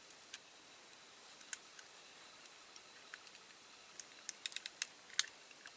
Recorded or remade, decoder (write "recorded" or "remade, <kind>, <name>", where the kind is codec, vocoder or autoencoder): recorded